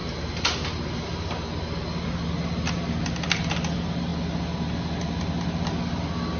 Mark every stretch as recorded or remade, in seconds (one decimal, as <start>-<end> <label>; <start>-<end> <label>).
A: 0.0-6.4 recorded